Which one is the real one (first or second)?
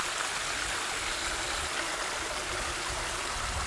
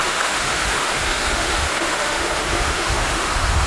first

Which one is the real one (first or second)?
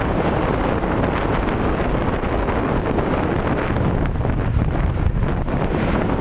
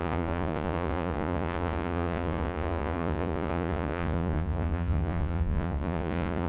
first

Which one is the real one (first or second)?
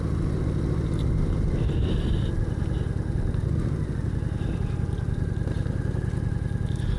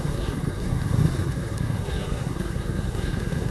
first